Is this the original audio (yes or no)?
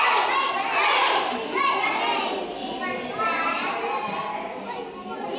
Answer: yes